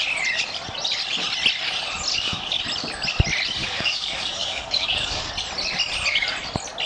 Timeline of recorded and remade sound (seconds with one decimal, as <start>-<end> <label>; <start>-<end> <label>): 0.0-2.1 recorded; 2.1-2.6 remade; 2.6-3.6 recorded; 3.6-5.3 remade; 5.3-6.9 recorded